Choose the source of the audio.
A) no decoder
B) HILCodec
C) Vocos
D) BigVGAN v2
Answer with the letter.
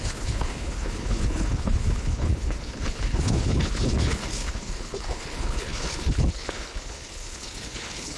B